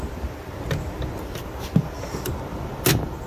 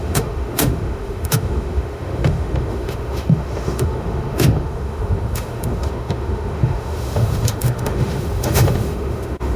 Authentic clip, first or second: first